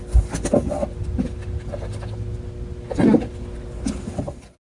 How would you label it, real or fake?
real